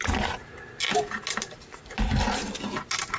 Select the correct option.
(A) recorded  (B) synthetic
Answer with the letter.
A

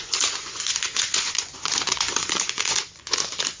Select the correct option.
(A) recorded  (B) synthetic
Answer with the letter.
B